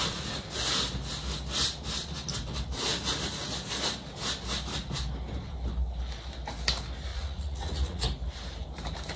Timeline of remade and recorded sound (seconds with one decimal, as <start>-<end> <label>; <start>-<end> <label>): 0.0-7.1 recorded; 7.1-8.0 remade; 8.0-9.2 recorded